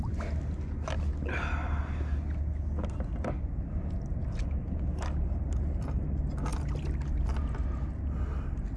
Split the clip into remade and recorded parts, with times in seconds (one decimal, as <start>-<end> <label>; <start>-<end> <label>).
0.0-8.8 recorded